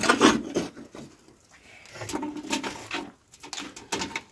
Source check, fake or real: real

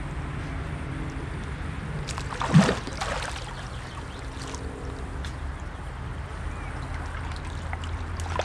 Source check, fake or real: real